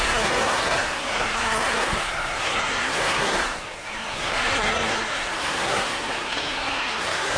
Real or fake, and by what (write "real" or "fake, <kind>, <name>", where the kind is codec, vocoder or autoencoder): fake, codec, SNAC